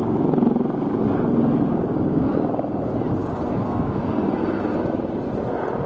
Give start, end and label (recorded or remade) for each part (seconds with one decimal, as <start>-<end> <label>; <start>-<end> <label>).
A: 0.0-1.7 recorded; 1.7-2.3 remade; 2.3-3.2 recorded; 3.2-4.0 remade; 4.0-5.9 recorded